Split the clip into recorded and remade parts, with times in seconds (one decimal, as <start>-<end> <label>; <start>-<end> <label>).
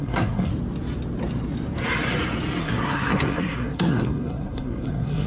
0.0-0.5 remade; 0.5-2.6 recorded; 2.6-5.3 remade